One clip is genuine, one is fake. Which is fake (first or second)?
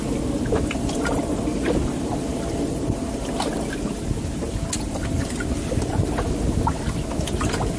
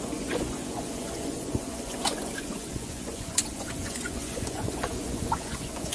second